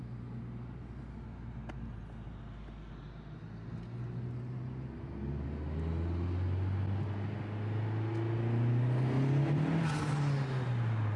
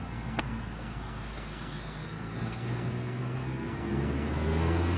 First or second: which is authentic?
first